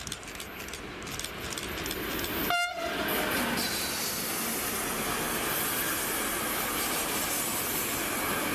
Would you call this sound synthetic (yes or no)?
no